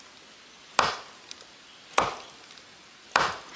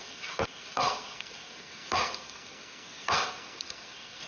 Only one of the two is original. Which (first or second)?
first